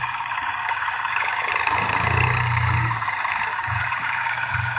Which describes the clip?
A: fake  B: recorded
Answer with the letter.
A